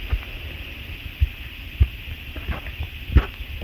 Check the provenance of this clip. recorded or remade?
recorded